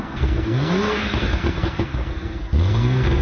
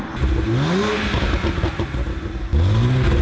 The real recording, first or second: second